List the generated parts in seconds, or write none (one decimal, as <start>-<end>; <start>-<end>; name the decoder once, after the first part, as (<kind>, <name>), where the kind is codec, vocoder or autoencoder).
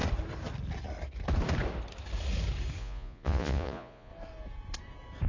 2.8-4.1 (vocoder, Vocos)